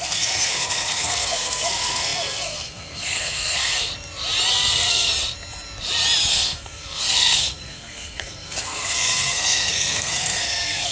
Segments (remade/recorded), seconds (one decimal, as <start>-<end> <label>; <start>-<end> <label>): 0.0-3.9 remade; 3.9-4.5 recorded; 4.5-5.1 remade; 5.1-6.3 recorded; 6.3-10.9 remade